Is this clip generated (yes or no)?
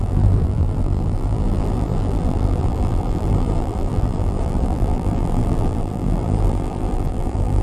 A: yes